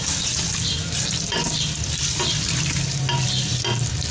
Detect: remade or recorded recorded